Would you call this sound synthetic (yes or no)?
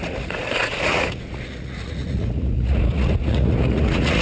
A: yes